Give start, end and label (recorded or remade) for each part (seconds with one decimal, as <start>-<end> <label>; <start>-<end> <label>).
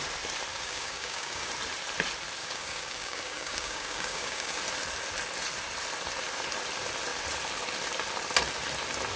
0.0-0.5 recorded; 0.5-1.5 remade; 1.5-2.4 recorded; 2.4-4.6 remade; 4.6-9.2 recorded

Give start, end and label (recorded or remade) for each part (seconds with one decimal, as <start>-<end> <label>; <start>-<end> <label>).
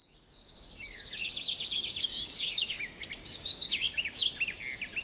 0.0-2.8 remade; 2.8-3.2 recorded; 3.2-4.3 remade; 4.3-5.0 recorded